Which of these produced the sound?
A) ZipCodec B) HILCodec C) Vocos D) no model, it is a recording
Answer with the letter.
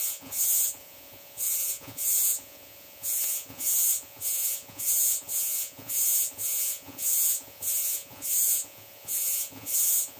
C